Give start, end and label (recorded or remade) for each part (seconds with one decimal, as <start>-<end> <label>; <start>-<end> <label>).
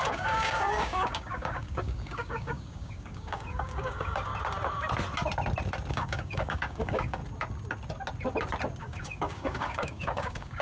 0.0-4.3 remade; 4.3-5.9 recorded; 5.9-7.2 remade; 7.2-8.8 recorded; 8.8-10.6 remade